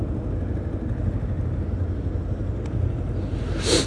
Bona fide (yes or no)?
yes